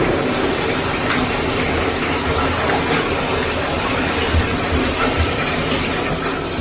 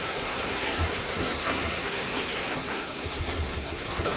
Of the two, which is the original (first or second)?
first